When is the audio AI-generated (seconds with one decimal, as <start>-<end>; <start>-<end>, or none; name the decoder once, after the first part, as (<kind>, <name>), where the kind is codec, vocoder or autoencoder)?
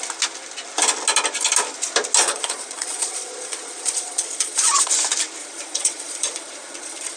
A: 2.2-4.9 (vocoder, Vocos); 5.4-7.2